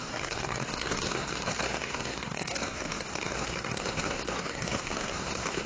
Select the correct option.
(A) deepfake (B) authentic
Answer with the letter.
A